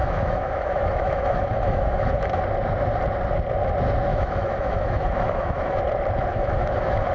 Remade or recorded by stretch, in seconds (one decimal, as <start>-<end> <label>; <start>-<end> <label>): 0.0-2.4 remade; 2.4-4.1 recorded; 4.1-5.8 remade; 5.8-6.3 recorded; 6.3-7.1 remade